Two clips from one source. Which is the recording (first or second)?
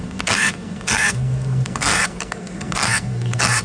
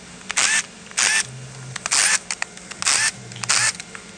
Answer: second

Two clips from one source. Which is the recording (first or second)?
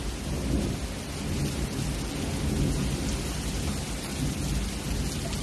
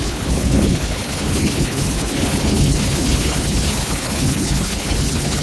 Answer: first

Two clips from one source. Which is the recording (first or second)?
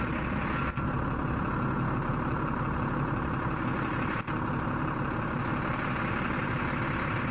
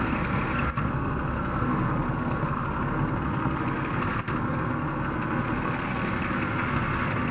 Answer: first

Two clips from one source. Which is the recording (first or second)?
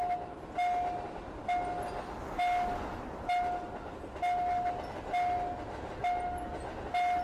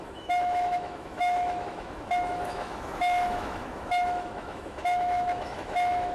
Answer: first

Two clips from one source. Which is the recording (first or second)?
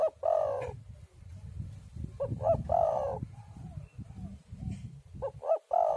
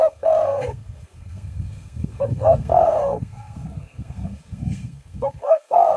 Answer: first